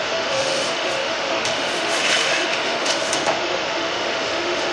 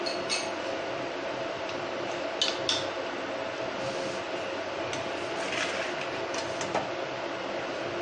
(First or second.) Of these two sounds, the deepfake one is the first